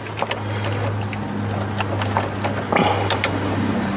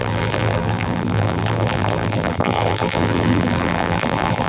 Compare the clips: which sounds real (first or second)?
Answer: first